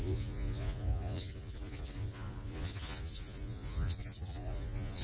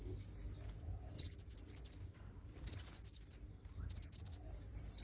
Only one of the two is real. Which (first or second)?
second